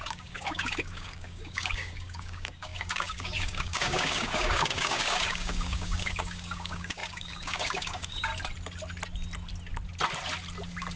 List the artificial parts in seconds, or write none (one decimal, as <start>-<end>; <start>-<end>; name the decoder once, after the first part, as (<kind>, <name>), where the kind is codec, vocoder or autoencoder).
0.0-8.3 (codec, DAC)